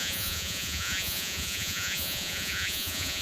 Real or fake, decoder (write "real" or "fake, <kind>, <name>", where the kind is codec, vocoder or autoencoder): fake, vocoder, Vocos